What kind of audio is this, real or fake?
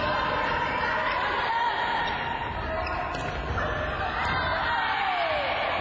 real